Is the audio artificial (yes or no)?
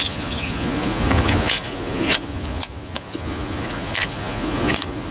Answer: yes